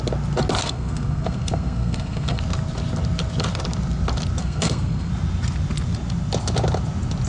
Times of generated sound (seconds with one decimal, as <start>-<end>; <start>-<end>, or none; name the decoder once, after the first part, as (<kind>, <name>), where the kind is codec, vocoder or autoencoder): 0.6-2.4 (codec, SNAC); 4.4-5.1